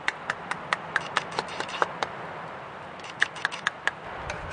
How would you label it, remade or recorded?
recorded